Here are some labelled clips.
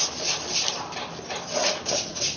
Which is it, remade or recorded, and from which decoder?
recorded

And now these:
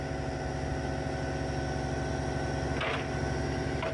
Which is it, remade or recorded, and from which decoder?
recorded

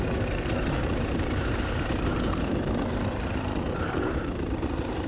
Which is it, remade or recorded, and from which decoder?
remade, vocoder, BigVGAN v2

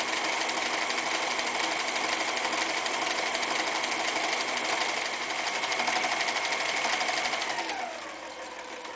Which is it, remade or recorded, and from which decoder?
recorded